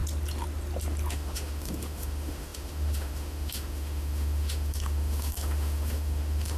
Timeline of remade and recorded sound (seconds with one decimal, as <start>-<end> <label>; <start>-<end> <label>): 0.0-1.1 recorded; 1.1-6.6 remade

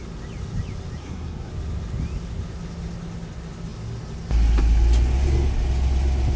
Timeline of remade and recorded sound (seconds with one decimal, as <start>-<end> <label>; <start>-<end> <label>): 0.0-1.0 recorded; 1.0-1.5 remade; 1.5-6.4 recorded